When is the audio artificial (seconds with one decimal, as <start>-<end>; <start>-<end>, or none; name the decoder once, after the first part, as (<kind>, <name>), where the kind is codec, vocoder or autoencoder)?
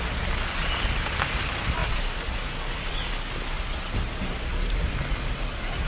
none